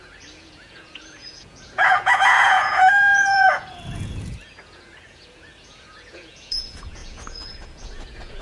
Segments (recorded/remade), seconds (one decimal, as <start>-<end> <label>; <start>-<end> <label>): 0.0-8.4 remade